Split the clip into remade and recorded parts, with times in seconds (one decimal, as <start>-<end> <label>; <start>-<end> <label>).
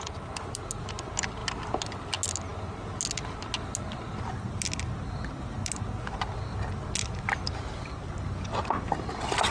0.0-9.5 recorded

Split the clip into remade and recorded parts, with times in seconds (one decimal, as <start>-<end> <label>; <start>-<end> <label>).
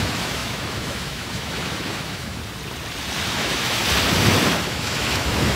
0.0-2.4 remade; 2.4-3.3 recorded; 3.3-3.8 remade; 3.8-4.5 recorded; 4.5-5.6 remade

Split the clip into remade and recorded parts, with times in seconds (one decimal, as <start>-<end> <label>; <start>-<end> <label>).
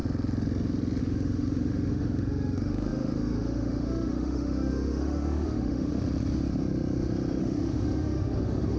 0.0-1.0 recorded; 1.0-5.9 remade; 5.9-7.4 recorded; 7.4-8.8 remade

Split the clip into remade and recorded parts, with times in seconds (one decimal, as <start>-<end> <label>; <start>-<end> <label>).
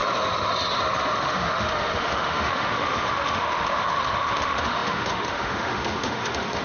0.0-1.2 recorded; 1.2-6.6 remade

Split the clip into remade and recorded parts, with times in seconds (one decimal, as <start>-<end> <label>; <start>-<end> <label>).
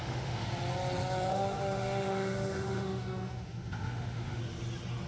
0.0-0.5 remade; 0.5-1.3 recorded; 1.3-4.4 remade; 4.4-5.1 recorded